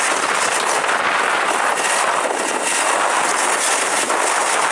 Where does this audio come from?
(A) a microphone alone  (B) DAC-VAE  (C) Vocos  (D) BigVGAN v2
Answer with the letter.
A